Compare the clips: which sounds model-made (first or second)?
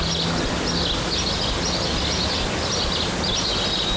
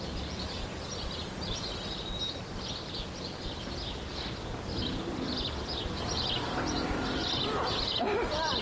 second